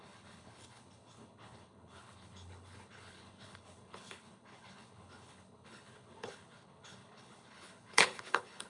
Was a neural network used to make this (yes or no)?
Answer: yes